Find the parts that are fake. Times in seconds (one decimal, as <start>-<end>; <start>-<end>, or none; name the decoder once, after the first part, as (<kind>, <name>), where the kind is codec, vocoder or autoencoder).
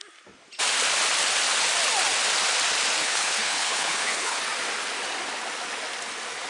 3.0-4.4 (codec, HILCodec)